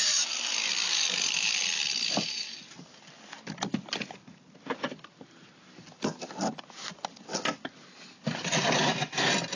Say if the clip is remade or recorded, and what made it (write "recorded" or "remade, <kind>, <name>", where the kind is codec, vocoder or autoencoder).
recorded